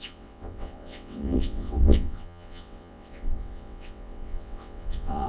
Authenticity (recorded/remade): remade